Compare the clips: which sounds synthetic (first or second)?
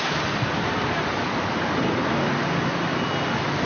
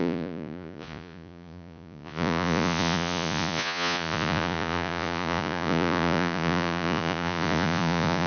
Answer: second